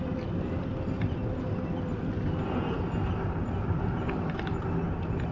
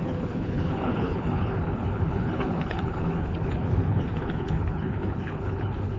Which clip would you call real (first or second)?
first